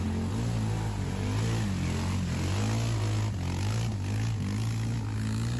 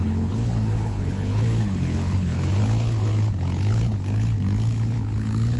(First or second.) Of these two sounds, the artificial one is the second